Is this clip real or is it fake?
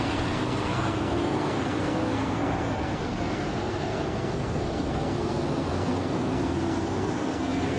fake